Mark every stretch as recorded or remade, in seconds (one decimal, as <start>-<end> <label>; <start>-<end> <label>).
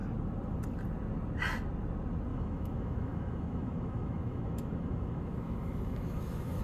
0.0-2.3 recorded; 2.3-6.6 remade